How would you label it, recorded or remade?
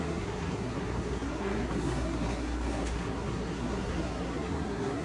remade